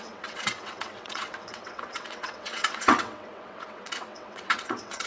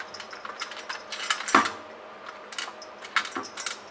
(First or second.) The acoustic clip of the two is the second